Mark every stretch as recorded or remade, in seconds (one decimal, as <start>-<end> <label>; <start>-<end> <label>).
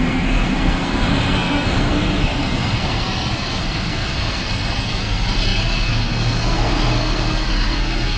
0.0-8.2 remade